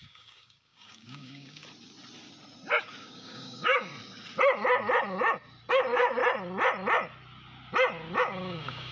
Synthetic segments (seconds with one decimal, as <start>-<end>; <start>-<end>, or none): 0.0-1.6; 3.0-3.9; 5.7-6.2; 8.2-8.9